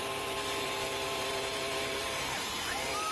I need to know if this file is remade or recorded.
remade